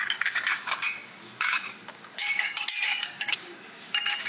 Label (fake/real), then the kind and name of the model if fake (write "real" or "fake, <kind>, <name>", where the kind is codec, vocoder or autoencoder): fake, codec, DAC